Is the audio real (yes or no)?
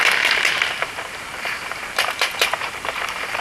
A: no